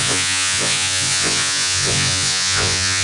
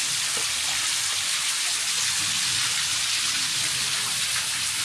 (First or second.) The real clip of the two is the second